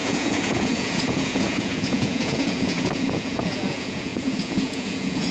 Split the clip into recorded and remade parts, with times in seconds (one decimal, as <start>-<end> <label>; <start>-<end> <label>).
0.0-5.3 remade